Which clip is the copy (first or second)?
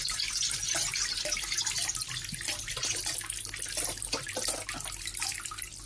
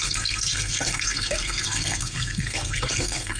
second